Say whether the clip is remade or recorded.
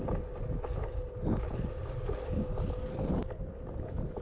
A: recorded